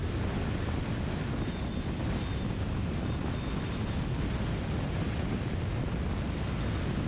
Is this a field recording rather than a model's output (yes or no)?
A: yes